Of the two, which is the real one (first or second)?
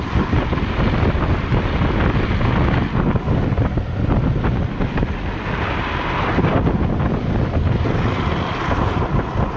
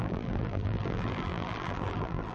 first